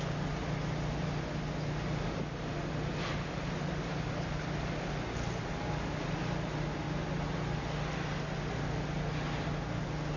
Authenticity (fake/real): real